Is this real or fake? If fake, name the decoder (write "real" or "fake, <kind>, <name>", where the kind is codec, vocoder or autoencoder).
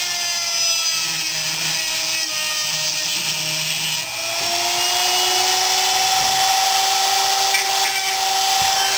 real